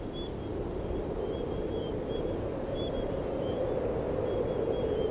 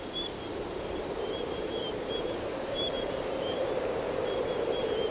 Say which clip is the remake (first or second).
second